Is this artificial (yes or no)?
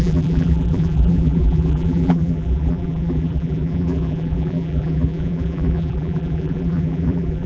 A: yes